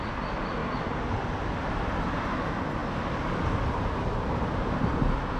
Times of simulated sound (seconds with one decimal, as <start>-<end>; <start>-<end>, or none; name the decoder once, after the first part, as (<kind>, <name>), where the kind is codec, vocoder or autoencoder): none